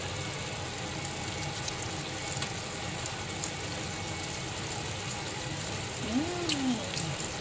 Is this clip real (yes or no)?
yes